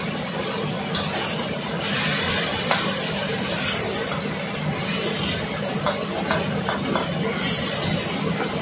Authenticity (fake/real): real